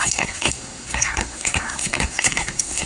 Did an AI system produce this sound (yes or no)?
yes